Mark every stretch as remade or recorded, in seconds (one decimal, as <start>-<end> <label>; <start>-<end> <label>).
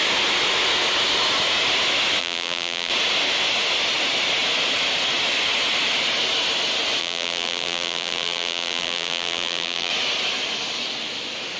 0.0-2.2 recorded; 2.2-2.9 remade; 2.9-7.0 recorded; 7.0-9.9 remade; 9.9-11.6 recorded